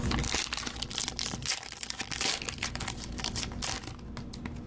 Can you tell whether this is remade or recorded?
recorded